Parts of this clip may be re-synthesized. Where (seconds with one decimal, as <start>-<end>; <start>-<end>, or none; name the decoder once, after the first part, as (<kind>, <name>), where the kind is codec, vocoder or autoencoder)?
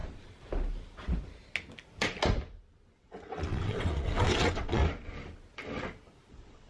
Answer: 3.0-4.8 (vocoder, WaveNeXt); 6.3-6.7